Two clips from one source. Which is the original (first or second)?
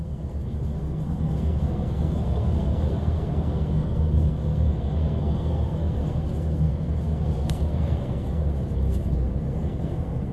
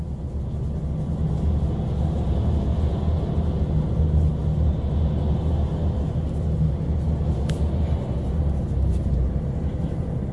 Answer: second